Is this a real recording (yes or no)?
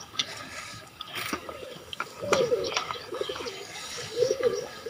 no